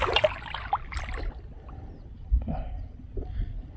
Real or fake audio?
fake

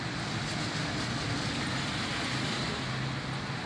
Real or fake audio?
real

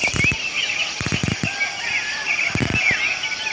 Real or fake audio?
real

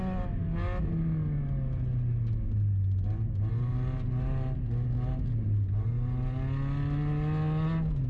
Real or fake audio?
real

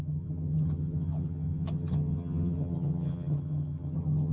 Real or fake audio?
fake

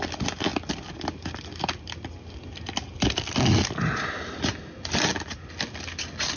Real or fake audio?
real